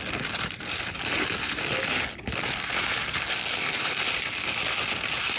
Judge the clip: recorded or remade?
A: recorded